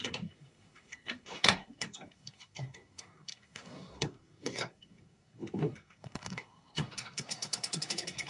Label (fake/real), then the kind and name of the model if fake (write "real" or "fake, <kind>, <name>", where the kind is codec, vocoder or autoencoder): fake, codec, SNAC